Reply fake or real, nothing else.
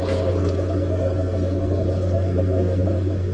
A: fake